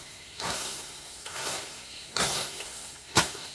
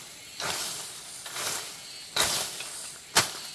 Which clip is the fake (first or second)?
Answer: first